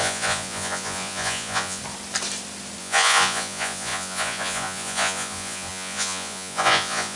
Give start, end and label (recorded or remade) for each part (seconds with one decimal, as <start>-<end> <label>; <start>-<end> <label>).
0.0-1.8 remade; 1.8-2.8 recorded; 2.8-7.2 remade